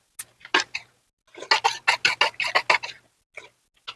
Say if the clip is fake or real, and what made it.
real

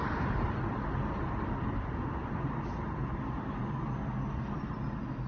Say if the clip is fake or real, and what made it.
real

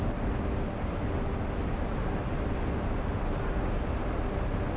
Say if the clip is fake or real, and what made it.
real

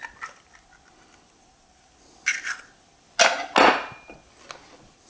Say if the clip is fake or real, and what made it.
real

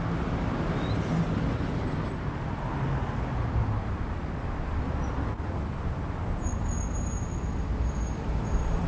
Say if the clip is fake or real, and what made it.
real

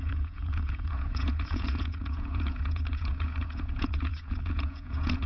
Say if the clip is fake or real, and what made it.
fake, vocoder, Vocos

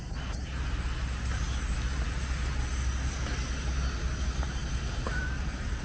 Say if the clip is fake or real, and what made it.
real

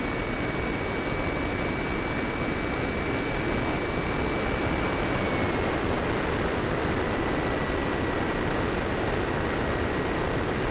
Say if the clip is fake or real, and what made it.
real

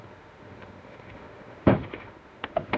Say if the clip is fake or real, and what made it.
fake, autoencoder, DAC-VAE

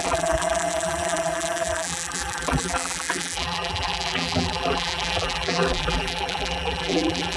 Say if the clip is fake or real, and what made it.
fake, vocoder, BigVGAN v2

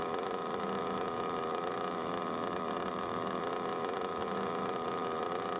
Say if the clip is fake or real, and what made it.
fake, autoencoder, DAC-VAE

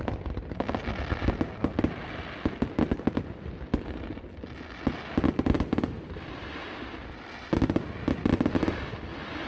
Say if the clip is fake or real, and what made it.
real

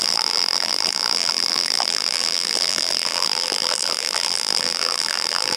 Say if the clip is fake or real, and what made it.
fake, vocoder, BigVGAN v2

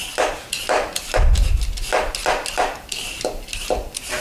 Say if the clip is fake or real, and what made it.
real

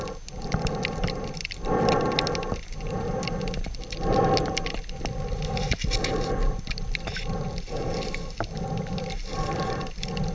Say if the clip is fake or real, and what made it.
real